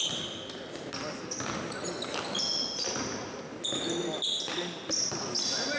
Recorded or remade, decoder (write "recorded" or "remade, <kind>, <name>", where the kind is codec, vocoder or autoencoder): recorded